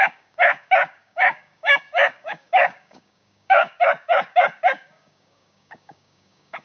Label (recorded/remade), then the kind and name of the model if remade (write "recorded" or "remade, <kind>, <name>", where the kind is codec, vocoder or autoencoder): remade, codec, DAC